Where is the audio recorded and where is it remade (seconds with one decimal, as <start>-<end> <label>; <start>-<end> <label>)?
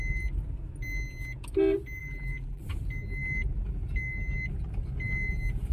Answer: 0.0-2.0 recorded; 2.0-2.6 remade; 2.6-5.7 recorded